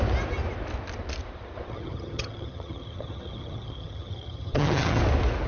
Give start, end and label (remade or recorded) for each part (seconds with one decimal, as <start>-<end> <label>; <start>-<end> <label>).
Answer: 0.0-1.7 recorded; 1.7-5.0 remade; 5.0-5.5 recorded